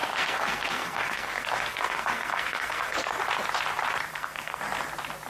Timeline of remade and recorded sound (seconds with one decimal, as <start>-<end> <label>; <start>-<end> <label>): 0.0-3.2 remade; 3.2-4.1 recorded; 4.1-4.6 remade; 4.6-5.3 recorded